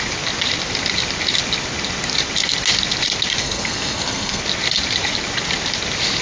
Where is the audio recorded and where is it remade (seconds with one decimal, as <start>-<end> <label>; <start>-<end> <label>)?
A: 0.0-3.4 recorded; 3.4-4.4 remade; 4.4-6.2 recorded